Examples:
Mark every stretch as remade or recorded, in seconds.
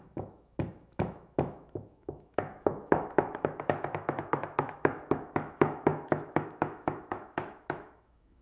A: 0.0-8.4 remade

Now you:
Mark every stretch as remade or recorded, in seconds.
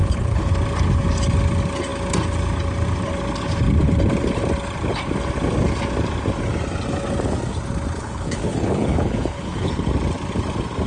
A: 0.0-0.5 remade; 0.5-8.0 recorded; 8.0-9.7 remade; 9.7-10.9 recorded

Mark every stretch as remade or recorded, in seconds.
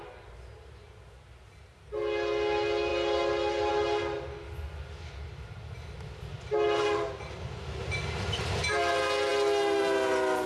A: 0.0-10.5 recorded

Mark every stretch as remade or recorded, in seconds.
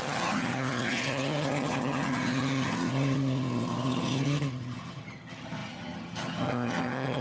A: 0.0-7.2 remade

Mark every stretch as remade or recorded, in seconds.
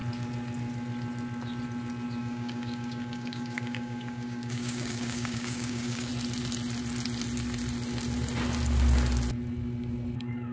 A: 0.0-2.2 recorded; 2.2-6.1 remade; 6.1-10.5 recorded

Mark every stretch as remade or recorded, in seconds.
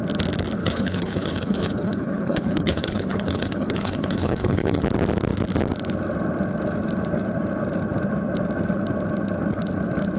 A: 0.0-0.6 recorded; 0.6-4.8 remade; 4.8-10.2 recorded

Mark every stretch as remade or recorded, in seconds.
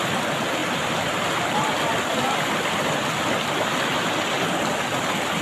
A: 0.0-5.4 recorded